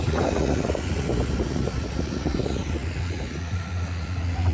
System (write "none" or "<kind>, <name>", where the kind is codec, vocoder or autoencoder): vocoder, Vocos